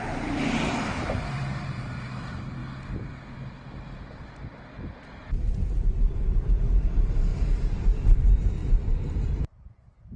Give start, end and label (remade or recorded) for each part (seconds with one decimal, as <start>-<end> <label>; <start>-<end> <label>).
0.0-2.6 remade; 2.6-5.4 recorded; 5.4-7.3 remade; 7.3-7.8 recorded; 7.8-10.2 remade